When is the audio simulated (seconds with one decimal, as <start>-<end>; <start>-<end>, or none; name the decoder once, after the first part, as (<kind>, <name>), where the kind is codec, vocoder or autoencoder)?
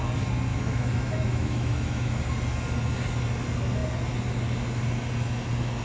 0.5-2.2 (autoencoder, DAC-VAE)